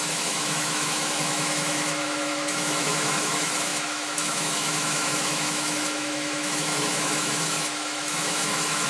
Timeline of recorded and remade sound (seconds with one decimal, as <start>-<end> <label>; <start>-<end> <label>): 0.0-8.9 remade